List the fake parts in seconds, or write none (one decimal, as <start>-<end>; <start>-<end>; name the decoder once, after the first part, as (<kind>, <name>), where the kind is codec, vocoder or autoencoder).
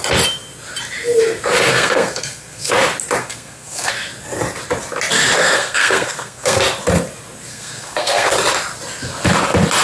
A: 1.7-2.7 (codec, SNAC); 3.2-3.9; 5.4-6.6; 7.5-8.3